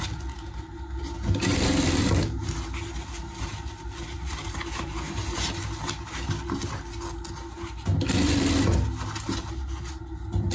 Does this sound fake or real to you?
real